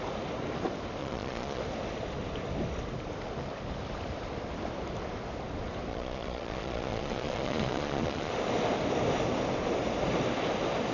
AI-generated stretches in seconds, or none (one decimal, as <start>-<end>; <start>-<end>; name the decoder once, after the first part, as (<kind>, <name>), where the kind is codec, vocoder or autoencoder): 1.0-1.6 (vocoder, Vocos); 5.9-8.3